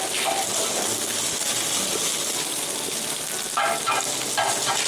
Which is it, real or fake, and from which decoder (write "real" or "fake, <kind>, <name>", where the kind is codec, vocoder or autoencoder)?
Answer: real